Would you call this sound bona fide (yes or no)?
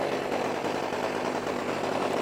yes